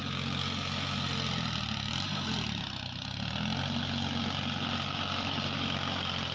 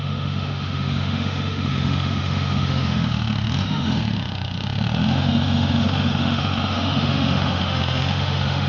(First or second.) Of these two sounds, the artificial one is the second